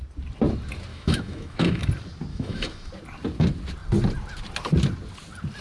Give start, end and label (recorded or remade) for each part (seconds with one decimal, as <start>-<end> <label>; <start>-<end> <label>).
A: 0.0-0.9 recorded; 0.9-1.9 remade; 1.9-2.3 recorded; 2.3-2.9 remade; 2.9-5.6 recorded